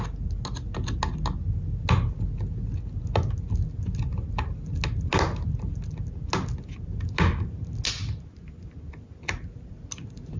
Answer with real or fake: real